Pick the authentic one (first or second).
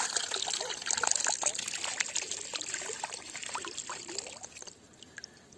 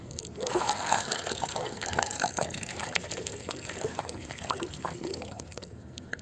first